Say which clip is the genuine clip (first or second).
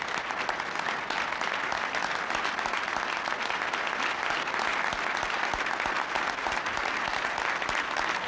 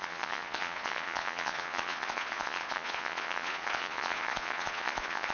first